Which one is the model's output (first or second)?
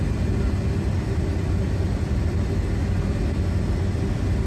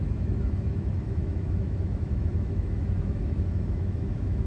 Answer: second